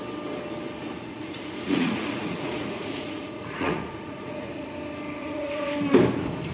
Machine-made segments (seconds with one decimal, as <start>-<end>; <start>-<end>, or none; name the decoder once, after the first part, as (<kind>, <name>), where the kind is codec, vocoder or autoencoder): 0.8-4.7 (vocoder, Vocos); 5.2-5.7